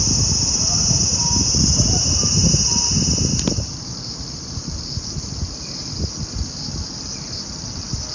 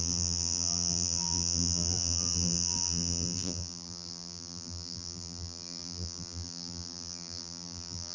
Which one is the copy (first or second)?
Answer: second